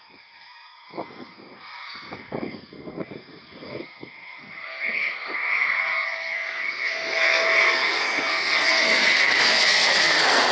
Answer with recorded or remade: remade